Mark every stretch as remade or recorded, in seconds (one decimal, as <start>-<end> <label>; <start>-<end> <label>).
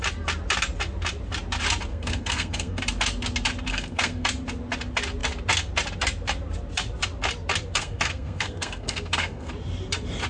0.0-1.9 recorded; 1.9-2.8 remade; 2.8-3.7 recorded; 3.7-4.3 remade; 4.3-7.8 recorded; 7.8-9.5 remade; 9.5-10.3 recorded